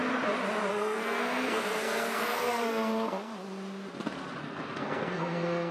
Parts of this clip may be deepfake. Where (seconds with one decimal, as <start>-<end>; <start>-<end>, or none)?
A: 0.7-3.3; 4.4-5.7